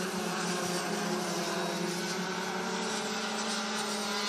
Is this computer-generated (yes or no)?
no